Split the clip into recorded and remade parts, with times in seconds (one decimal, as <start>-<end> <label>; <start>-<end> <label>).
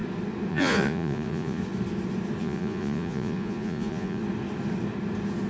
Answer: 0.0-0.5 recorded; 0.5-1.6 remade; 1.6-2.4 recorded; 2.4-4.2 remade; 4.2-5.5 recorded